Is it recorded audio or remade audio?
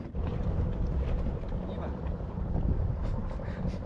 recorded